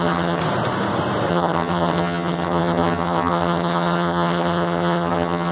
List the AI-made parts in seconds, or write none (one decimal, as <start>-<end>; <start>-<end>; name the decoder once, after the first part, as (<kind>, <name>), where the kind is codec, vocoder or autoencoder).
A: 0.0-0.4 (vocoder, HiFi-GAN); 1.3-5.5